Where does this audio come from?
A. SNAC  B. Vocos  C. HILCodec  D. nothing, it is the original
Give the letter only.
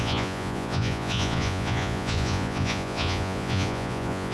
B